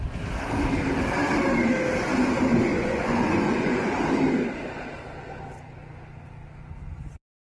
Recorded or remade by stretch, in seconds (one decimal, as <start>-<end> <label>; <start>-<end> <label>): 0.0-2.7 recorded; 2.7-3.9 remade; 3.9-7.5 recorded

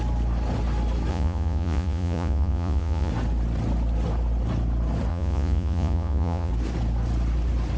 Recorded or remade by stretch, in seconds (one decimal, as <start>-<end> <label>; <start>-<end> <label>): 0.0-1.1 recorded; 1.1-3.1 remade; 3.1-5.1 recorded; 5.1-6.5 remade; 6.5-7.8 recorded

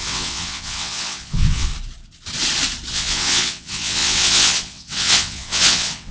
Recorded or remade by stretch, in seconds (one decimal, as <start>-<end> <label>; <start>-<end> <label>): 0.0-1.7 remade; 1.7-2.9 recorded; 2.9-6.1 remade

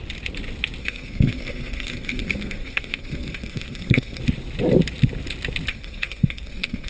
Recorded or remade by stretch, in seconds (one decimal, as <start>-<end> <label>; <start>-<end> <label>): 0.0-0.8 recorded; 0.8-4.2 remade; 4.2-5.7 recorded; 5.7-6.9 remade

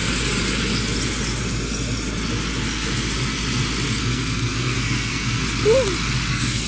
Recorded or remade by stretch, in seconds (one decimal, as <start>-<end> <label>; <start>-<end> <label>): 0.0-4.0 recorded; 4.0-5.4 remade; 5.4-6.3 recorded; 6.3-6.7 remade

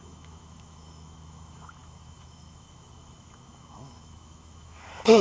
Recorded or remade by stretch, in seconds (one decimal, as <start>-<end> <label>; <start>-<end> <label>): 0.0-5.2 remade

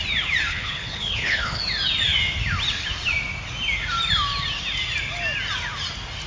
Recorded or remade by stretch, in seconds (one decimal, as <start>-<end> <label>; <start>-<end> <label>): 0.0-0.5 recorded; 0.5-1.6 remade; 1.6-6.3 recorded

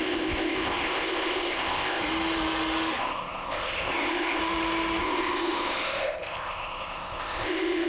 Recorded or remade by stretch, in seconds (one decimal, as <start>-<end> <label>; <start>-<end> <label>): 0.0-2.0 remade; 2.0-3.0 recorded; 3.0-4.4 remade; 4.4-5.0 recorded; 5.0-7.9 remade